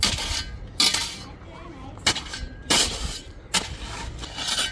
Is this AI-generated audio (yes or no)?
no